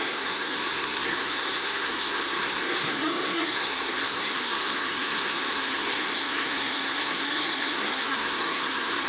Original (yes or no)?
no